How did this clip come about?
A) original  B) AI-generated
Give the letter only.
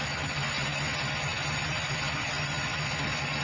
A